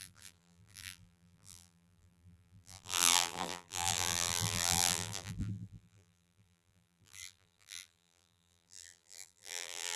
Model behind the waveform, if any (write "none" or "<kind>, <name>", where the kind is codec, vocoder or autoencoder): vocoder, BigVGAN v2